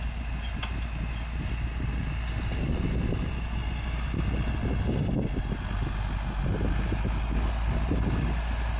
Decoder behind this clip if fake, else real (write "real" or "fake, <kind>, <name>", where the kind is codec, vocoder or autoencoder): real